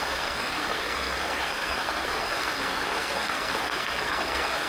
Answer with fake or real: fake